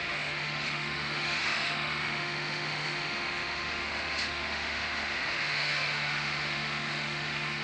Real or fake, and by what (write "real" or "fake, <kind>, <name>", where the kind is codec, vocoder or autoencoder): fake, autoencoder, DAC-VAE